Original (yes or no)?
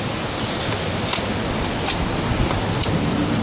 yes